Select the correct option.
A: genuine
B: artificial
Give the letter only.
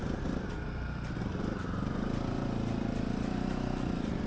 A